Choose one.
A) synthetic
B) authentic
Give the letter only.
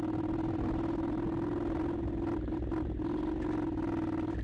B